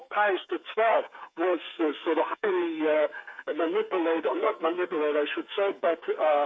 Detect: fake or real fake